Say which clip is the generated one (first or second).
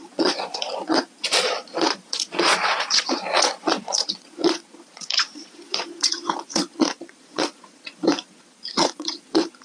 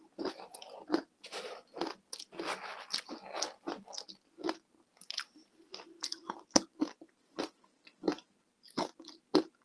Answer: first